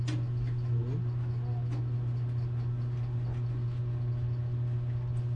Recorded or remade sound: recorded